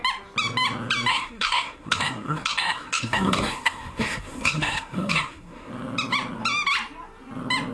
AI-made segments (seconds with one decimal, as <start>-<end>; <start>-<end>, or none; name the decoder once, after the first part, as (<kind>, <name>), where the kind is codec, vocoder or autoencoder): 1.1-5.7 (codec, SNAC)